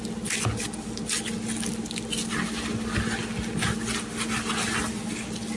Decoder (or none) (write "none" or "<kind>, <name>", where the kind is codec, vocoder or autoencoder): none